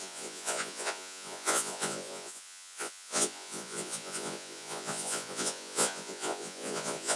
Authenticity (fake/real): fake